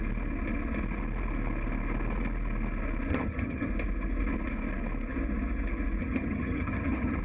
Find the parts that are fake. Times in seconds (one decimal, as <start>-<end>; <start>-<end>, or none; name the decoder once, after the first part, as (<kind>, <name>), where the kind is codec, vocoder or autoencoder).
3.1-3.7 (vocoder, HiFi-GAN); 6.0-7.2